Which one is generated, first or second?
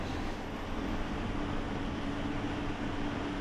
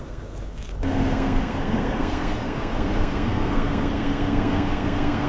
second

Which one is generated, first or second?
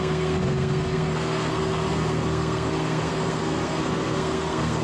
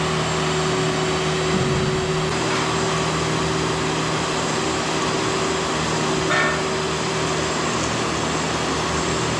first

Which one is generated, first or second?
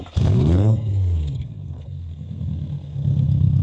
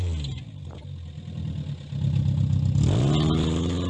first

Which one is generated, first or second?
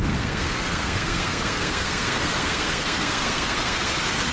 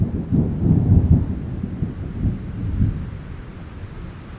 first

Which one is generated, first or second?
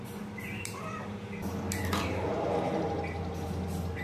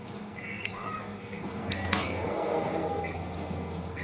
second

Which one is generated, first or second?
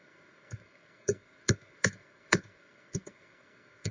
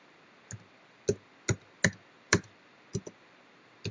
first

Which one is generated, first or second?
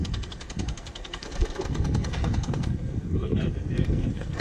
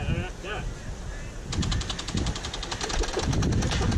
first